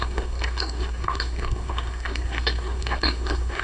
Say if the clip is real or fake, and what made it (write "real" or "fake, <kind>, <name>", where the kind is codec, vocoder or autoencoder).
fake, codec, SNAC